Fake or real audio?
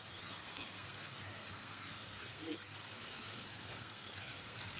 fake